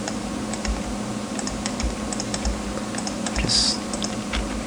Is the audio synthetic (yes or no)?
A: yes